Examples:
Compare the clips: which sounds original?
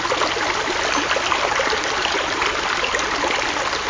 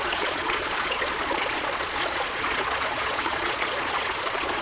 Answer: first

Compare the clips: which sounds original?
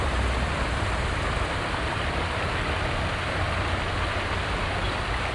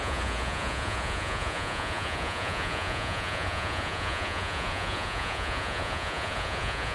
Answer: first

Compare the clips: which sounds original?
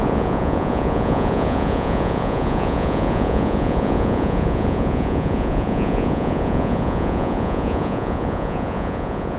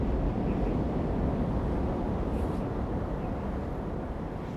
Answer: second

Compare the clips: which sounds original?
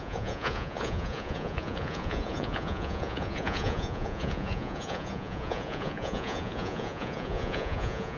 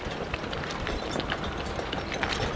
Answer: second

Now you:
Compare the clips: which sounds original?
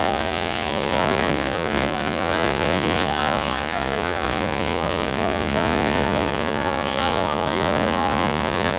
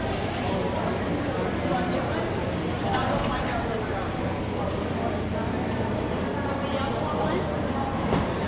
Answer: second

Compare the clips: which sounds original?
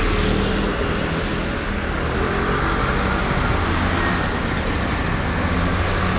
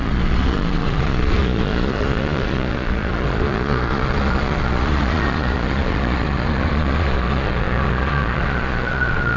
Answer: first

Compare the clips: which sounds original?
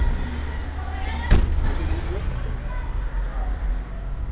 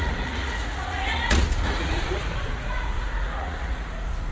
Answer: first